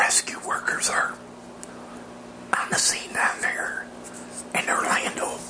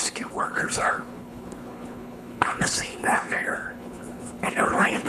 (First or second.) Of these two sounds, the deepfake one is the second